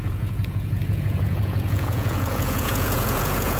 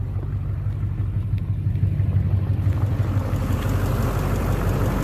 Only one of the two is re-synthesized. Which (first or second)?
first